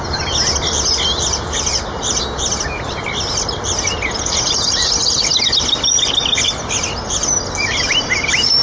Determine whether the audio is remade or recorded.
recorded